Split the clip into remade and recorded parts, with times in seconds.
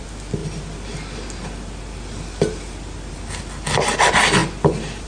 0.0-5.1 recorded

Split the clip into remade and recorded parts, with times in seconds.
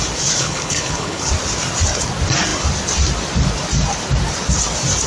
0.0-0.4 recorded; 0.4-1.3 remade; 1.3-5.1 recorded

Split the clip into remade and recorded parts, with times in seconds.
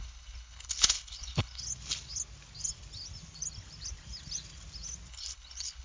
0.0-1.6 remade; 1.6-5.1 recorded; 5.1-5.8 remade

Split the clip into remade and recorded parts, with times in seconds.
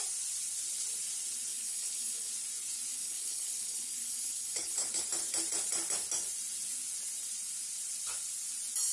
0.0-1.5 recorded; 1.5-2.3 remade; 2.3-2.9 recorded; 2.9-5.0 remade; 5.0-8.9 recorded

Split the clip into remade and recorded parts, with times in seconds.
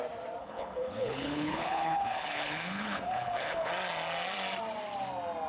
0.0-0.4 recorded; 0.4-3.7 remade; 3.7-5.5 recorded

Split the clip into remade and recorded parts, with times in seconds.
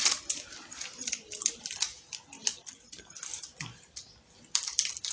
0.0-5.1 recorded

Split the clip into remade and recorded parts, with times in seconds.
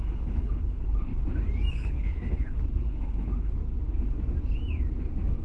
0.0-1.1 remade; 1.1-1.7 recorded; 1.7-3.6 remade; 3.6-5.4 recorded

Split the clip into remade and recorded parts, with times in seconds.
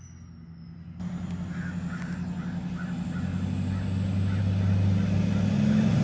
0.0-6.0 recorded